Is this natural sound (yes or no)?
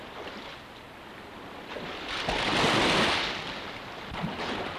yes